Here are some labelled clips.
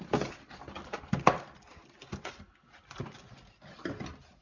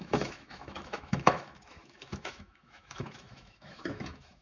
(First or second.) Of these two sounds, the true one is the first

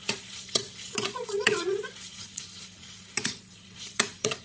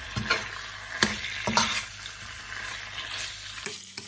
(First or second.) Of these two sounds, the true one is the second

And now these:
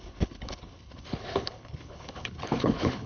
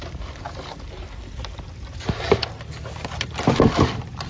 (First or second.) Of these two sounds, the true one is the second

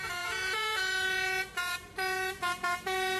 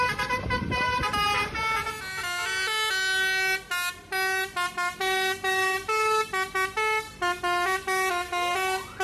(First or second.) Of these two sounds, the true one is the second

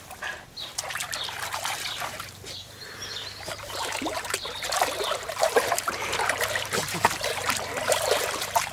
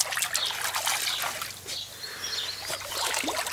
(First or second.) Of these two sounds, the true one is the second